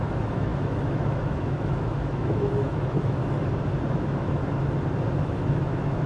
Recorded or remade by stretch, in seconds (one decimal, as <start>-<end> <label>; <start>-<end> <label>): 0.0-3.2 remade; 3.2-3.9 recorded; 3.9-4.4 remade; 4.4-5.1 recorded; 5.1-6.1 remade